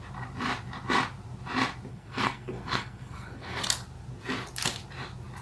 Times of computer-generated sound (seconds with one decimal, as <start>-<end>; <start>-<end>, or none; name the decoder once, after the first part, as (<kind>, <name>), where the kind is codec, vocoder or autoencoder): 1.9-3.6 (codec, SNAC)